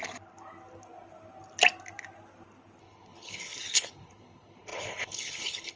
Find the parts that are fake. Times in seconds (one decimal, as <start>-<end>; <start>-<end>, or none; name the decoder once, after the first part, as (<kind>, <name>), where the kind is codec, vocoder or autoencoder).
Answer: 2.8-5.8 (codec, HILCodec)